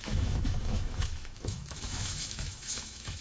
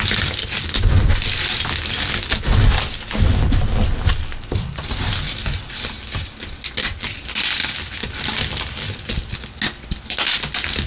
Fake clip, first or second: first